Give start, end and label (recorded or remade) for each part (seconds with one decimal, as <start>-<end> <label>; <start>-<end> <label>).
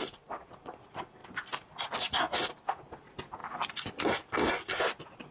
0.0-5.3 recorded